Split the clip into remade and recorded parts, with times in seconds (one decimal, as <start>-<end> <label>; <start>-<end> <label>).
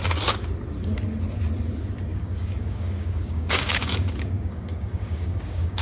0.0-2.1 recorded; 2.1-5.8 remade